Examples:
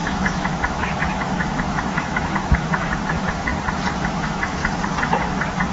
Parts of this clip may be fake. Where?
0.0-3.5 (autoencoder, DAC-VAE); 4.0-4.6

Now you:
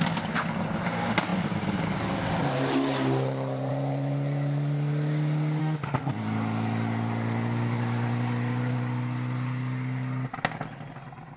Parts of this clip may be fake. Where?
5.6-6.1 (autoencoder, DAC-VAE)

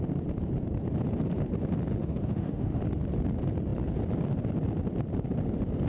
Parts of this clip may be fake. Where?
2.0-2.8 (autoencoder, DAC-VAE)

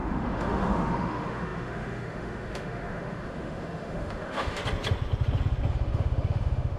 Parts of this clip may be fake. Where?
0.0-4.6 (autoencoder, DAC-VAE); 5.7-6.8

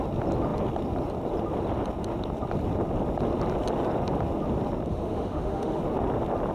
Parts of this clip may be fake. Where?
4.9-5.8 (autoencoder, DAC-VAE)